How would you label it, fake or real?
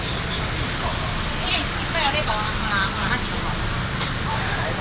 real